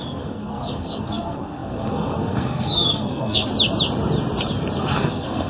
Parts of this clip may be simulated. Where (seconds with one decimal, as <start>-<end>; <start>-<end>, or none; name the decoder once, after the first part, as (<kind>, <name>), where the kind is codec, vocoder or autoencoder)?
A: 0.0-3.5 (codec, SNAC); 4.8-5.5